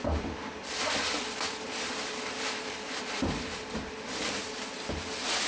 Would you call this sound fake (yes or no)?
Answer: yes